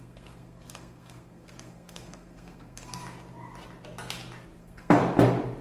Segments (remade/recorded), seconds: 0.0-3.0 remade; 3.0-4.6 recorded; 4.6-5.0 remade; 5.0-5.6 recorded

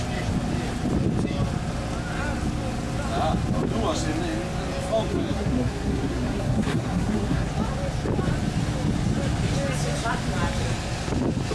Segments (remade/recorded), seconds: 0.0-5.1 recorded; 5.1-7.5 remade; 7.5-11.5 recorded

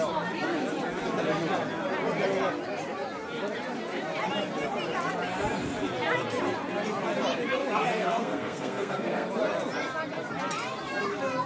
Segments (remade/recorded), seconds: 0.0-7.6 recorded; 7.6-9.3 remade; 9.3-11.5 recorded

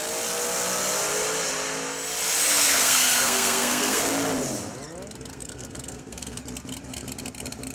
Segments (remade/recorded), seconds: 0.0-2.5 recorded; 2.5-4.1 remade; 4.1-5.3 recorded; 5.3-6.4 remade; 6.4-7.7 recorded

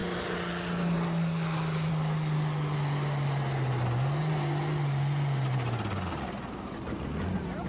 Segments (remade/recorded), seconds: 0.0-7.7 recorded